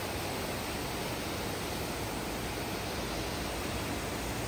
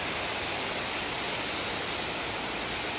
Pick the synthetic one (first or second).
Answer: second